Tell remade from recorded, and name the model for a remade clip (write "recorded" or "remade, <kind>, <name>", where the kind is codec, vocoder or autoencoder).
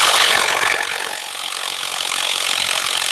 remade, codec, HILCodec